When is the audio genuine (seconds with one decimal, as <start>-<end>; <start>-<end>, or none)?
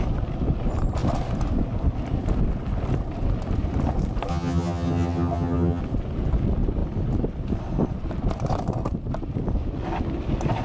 0.0-4.3; 5.8-10.6